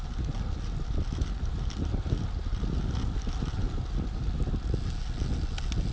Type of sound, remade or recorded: recorded